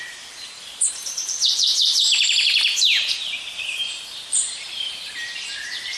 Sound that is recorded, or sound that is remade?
remade